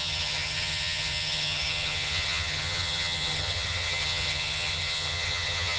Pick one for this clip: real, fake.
fake